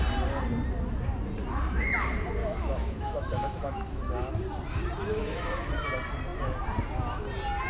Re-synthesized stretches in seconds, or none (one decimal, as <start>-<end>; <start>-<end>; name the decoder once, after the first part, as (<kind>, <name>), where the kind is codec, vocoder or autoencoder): 2.4-4.3 (autoencoder, DAC-VAE); 5.1-5.7